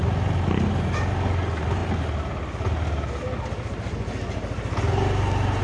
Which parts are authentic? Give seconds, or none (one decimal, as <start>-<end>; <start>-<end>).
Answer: 0.0-5.6